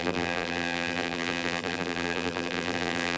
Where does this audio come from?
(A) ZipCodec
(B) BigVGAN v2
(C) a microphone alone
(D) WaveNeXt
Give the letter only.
B